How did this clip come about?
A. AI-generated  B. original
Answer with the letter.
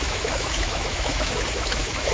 A